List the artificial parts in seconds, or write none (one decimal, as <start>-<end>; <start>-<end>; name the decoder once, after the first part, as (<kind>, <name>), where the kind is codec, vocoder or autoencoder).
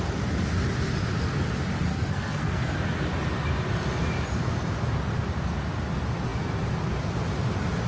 1.9-2.7 (codec, SNAC)